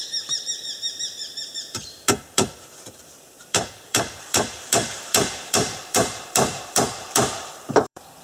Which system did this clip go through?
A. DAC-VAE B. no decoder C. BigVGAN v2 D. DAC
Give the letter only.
C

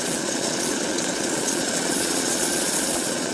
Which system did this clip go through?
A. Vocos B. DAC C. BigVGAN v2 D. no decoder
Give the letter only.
A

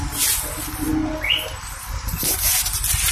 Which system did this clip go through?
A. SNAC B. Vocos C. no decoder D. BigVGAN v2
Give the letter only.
C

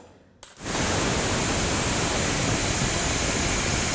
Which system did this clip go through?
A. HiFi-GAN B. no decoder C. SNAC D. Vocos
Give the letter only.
B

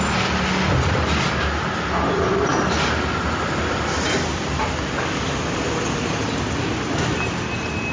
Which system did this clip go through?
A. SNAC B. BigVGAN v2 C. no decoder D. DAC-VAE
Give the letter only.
C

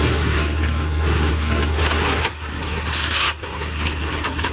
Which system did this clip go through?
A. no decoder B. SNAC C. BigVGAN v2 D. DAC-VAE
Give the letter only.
B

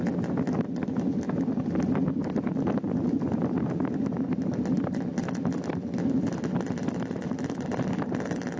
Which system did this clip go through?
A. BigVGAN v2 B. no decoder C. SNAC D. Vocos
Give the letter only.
B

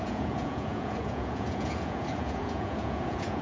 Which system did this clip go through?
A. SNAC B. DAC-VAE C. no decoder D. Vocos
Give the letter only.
D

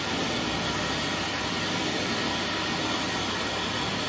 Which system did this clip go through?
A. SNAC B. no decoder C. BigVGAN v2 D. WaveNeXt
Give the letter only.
B